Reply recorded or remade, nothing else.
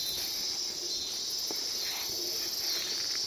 recorded